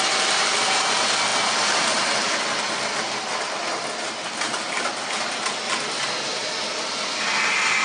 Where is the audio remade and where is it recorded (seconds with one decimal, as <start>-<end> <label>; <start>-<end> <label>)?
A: 0.0-7.8 recorded